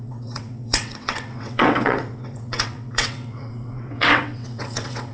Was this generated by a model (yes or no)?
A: yes